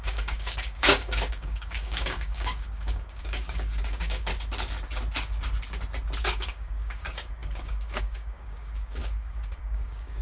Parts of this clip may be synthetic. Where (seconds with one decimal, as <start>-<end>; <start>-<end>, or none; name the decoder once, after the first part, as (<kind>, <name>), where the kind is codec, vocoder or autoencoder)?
0.0-4.3 (codec, DAC); 6.2-10.2